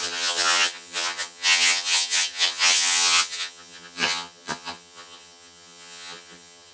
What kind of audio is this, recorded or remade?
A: remade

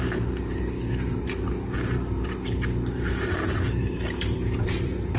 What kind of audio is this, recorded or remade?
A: remade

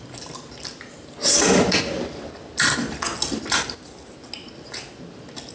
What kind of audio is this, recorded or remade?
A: recorded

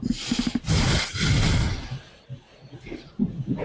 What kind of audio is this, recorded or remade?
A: recorded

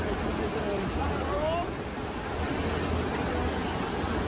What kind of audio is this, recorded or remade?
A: recorded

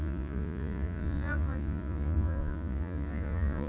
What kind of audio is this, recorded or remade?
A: remade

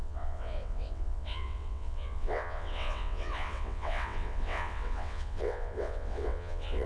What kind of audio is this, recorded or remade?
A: remade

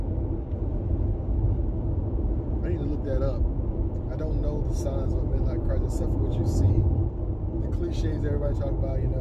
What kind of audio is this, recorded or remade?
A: recorded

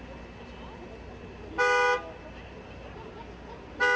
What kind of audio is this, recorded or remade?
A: recorded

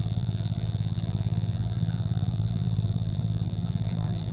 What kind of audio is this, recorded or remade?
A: remade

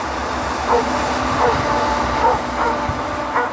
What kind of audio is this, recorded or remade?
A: recorded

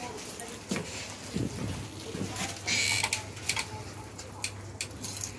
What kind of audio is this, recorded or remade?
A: recorded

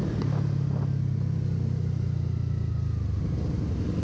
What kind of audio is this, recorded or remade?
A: recorded